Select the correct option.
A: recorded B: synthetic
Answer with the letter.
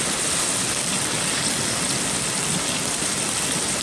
A